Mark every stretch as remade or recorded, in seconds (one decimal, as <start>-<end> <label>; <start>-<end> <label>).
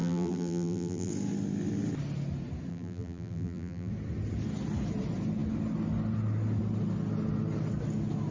0.0-1.1 remade; 1.1-2.7 recorded; 2.7-3.9 remade; 3.9-8.3 recorded